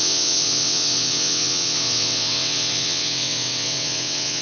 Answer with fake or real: fake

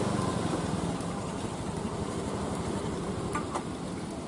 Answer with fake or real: real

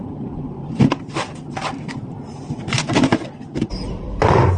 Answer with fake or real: fake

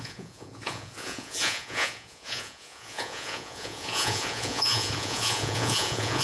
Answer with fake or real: fake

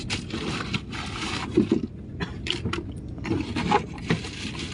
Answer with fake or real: real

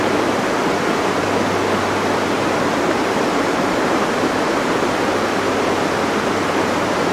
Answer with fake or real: real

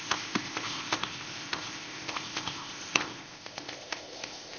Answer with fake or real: fake